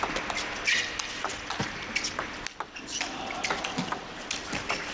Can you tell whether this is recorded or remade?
recorded